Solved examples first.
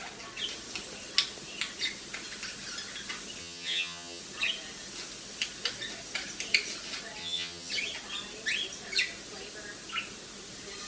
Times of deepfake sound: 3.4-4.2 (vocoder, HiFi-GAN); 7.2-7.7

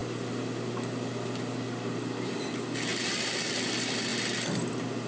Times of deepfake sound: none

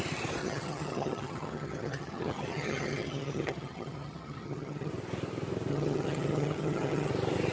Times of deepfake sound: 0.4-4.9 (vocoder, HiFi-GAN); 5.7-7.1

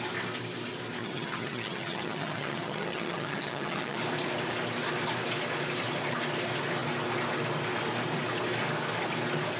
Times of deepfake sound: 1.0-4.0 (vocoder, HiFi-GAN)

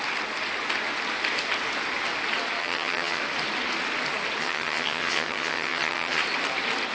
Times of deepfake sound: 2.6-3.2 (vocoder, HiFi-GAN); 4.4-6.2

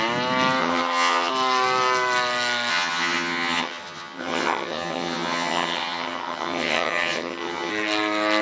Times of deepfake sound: 0.6-1.3 (vocoder, HiFi-GAN); 2.7-7.7

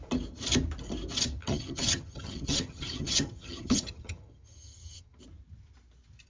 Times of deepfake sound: 1.4-5.2 (vocoder, HiFi-GAN)

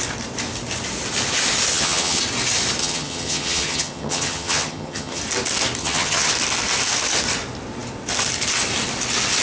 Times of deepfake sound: 1.7-2.2 (vocoder, HiFi-GAN); 2.8-5.2; 5.8-6.3